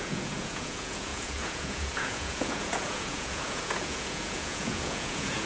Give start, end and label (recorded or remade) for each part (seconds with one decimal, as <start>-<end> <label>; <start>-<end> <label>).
0.0-5.5 remade